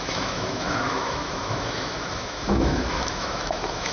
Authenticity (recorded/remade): remade